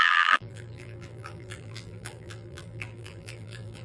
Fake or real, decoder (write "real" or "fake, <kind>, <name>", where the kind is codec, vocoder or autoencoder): fake, vocoder, BigVGAN v2